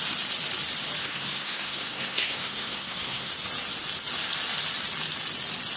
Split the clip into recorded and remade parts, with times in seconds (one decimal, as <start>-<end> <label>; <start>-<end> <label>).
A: 0.0-1.0 recorded; 1.0-3.3 remade; 3.3-5.8 recorded